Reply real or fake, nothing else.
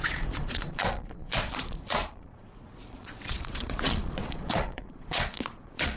fake